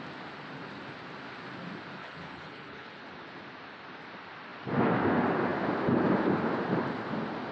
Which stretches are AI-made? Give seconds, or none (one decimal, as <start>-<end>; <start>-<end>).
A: 2.0-3.0